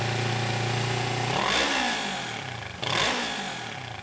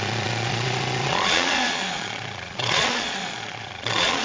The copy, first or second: second